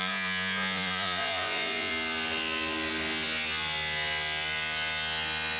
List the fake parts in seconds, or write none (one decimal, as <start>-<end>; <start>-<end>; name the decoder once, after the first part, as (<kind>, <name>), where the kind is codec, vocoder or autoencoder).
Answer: 0.0-1.9 (vocoder, Vocos)